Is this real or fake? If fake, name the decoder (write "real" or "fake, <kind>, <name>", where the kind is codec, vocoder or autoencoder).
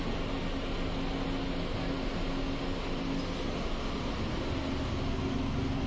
real